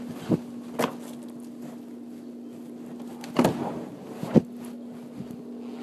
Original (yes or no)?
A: yes